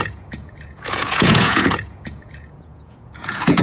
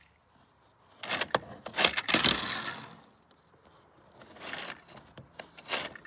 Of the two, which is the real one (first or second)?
second